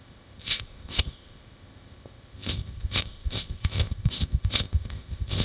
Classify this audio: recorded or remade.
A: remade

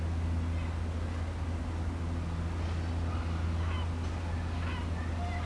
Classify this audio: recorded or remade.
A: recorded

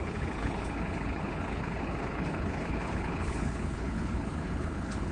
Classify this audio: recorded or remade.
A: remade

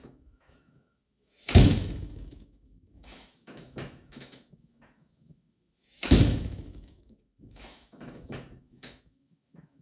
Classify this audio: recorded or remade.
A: remade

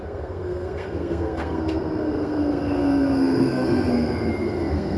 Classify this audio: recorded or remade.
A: remade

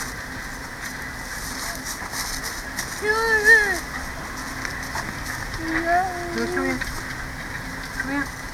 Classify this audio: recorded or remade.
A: recorded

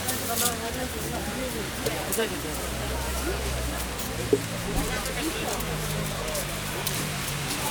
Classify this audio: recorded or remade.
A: remade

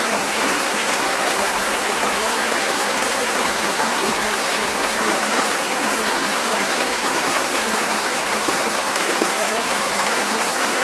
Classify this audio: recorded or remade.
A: remade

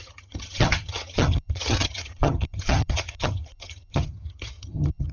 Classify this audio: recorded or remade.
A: remade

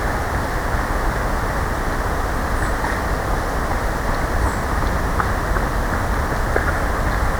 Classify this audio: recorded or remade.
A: recorded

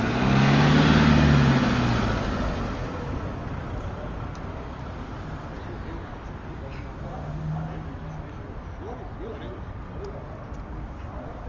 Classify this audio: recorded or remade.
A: recorded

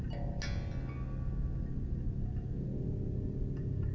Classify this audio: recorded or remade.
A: recorded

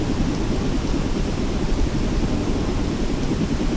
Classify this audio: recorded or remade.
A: recorded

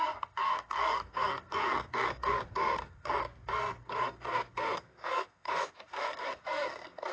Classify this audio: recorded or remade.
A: remade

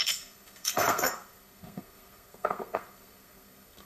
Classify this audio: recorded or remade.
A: remade